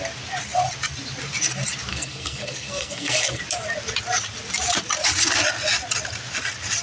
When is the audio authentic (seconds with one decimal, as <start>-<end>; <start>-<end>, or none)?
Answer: 0.0-1.9; 3.4-6.8